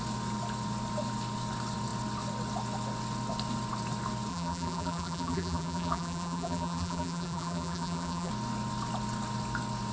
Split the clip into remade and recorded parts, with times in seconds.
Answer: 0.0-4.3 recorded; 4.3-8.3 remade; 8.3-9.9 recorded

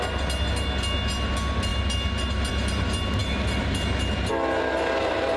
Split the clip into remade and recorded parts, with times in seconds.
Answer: 0.0-5.4 recorded